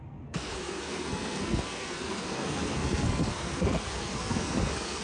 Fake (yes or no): yes